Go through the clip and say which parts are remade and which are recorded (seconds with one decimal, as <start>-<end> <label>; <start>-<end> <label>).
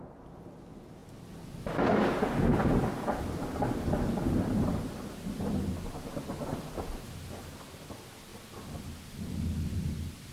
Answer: 0.0-6.5 recorded; 6.5-7.5 remade; 7.5-8.3 recorded; 8.3-8.9 remade; 8.9-10.3 recorded